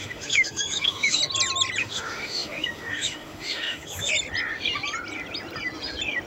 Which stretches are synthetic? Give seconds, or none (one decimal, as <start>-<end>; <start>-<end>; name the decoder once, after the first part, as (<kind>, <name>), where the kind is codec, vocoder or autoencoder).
0.0-1.2 (autoencoder, DAC-VAE); 1.8-4.1